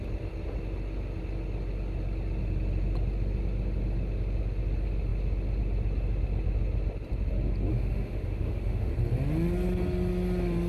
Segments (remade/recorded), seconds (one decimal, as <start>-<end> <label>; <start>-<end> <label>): 0.0-7.7 recorded; 7.7-8.9 remade; 8.9-10.7 recorded